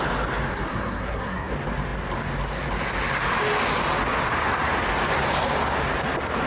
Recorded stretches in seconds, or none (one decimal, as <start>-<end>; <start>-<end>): 0.0-0.5; 1.5-6.5